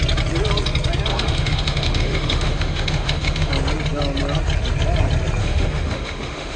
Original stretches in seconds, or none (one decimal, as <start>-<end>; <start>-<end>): 0.0-1.1; 3.5-5.4